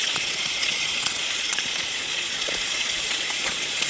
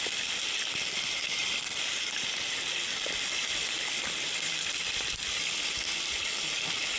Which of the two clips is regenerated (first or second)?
first